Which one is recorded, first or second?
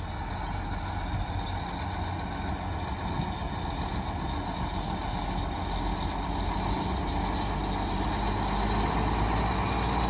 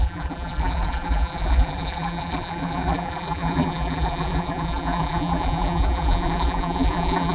first